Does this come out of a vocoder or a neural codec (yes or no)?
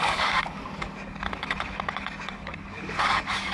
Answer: yes